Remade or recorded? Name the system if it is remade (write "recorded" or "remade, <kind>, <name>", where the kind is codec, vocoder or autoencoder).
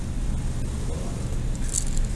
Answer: recorded